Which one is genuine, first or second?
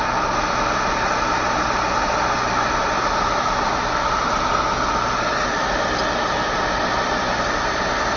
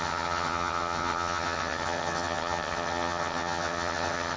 first